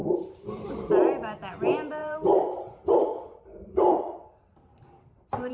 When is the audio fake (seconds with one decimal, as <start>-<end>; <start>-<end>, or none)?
0.0-0.7; 2.0-5.5